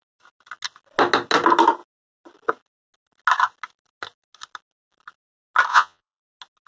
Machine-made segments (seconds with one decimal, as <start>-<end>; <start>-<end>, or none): 5.7-6.2